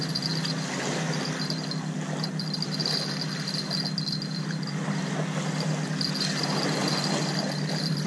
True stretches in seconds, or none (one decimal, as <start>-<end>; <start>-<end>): 0.0-8.1